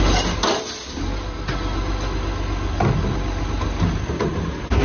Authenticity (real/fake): real